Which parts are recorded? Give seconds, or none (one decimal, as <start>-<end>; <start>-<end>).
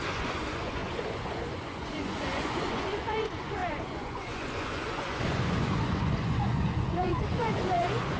none